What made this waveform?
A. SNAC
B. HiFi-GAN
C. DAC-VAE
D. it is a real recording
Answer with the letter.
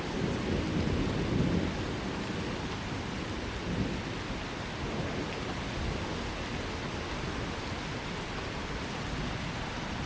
D